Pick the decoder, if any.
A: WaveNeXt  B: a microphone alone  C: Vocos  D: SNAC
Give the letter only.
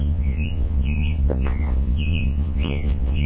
C